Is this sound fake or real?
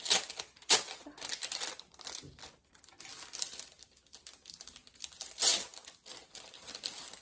real